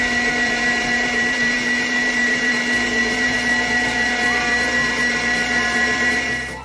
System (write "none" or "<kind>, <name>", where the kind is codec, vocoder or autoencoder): vocoder, BigVGAN v2